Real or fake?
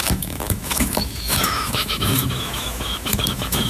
fake